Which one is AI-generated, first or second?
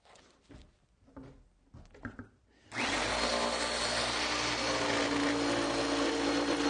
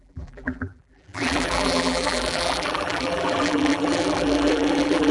second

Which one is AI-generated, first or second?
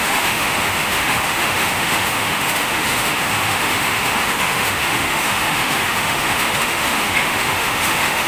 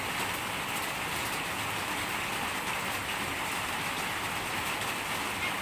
first